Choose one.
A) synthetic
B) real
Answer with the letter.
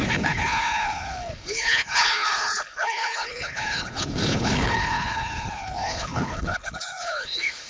A